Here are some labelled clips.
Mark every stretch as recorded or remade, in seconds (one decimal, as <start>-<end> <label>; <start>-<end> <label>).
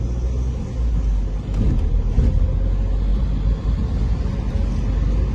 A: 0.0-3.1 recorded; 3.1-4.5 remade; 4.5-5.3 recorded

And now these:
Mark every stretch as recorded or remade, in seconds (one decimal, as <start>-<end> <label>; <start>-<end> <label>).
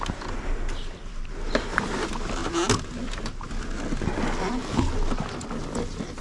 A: 0.0-6.2 recorded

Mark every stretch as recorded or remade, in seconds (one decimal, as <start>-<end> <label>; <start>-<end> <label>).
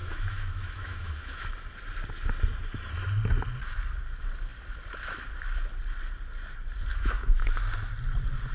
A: 0.0-1.4 remade; 1.4-6.9 recorded; 6.9-7.6 remade; 7.6-8.5 recorded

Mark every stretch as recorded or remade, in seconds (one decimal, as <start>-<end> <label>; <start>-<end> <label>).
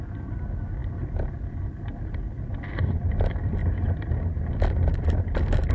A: 0.0-5.7 recorded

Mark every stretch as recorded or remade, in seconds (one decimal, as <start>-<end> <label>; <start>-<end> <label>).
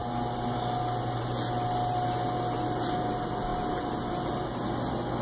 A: 0.0-5.2 recorded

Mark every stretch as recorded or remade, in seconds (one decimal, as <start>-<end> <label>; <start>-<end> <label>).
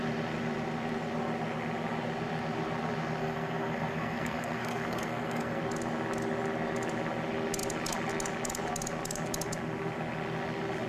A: 0.0-3.2 recorded; 3.2-5.6 remade; 5.6-10.9 recorded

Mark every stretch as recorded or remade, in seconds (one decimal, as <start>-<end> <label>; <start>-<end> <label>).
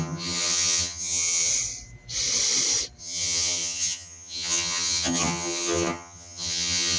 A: 0.0-1.5 remade; 1.5-3.0 recorded; 3.0-7.0 remade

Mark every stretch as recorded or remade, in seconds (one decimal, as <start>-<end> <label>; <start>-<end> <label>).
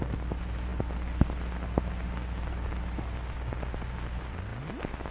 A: 0.0-5.1 recorded